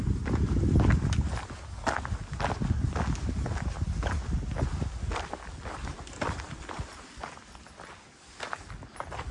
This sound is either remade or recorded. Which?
recorded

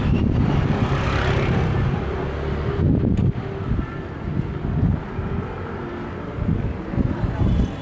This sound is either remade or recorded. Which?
recorded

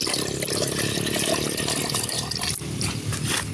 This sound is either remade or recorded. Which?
recorded